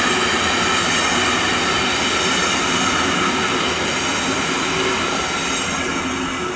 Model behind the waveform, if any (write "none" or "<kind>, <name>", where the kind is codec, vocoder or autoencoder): none